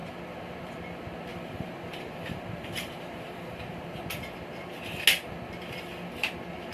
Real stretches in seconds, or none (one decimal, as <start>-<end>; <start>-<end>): 0.0-1.3; 3.8-6.7